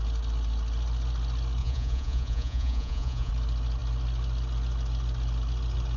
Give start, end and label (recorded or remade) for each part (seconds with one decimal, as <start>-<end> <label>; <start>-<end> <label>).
0.0-1.6 recorded; 1.6-3.3 remade; 3.3-6.0 recorded